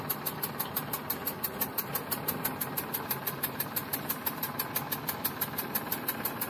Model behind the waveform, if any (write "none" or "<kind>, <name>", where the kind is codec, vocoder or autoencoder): vocoder, BigVGAN v2